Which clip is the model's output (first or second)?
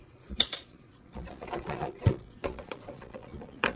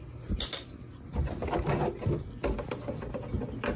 first